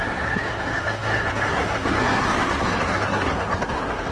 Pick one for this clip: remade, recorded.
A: remade